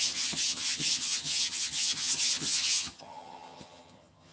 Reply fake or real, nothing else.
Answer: fake